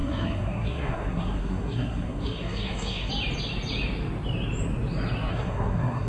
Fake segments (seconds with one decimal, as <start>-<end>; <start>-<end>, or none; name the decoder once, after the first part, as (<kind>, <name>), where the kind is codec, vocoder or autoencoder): 0.0-3.1 (codec, SNAC); 5.3-6.1